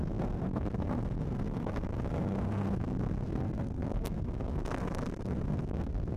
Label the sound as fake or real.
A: fake